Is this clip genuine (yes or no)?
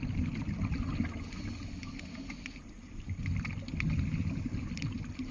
yes